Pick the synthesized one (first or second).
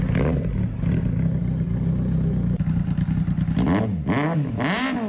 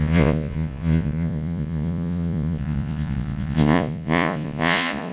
second